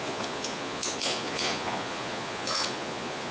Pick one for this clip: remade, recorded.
remade